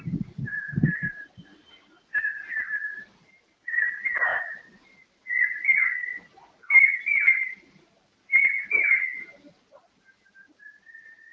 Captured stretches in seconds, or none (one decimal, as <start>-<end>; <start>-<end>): 0.0-11.3